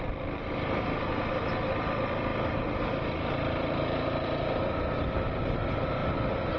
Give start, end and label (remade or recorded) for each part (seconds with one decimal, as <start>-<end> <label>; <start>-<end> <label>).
0.0-2.3 remade; 2.3-2.9 recorded; 2.9-6.6 remade